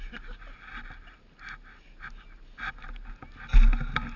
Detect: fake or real real